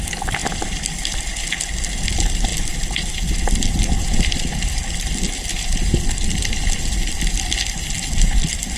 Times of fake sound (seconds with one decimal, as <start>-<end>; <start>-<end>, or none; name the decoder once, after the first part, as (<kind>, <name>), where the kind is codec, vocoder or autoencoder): none